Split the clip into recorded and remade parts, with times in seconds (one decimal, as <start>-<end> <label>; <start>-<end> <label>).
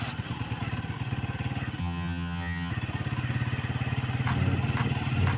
0.0-1.8 recorded; 1.8-2.7 remade; 2.7-5.4 recorded